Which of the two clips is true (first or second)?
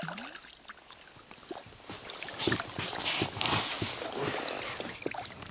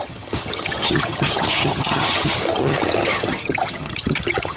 first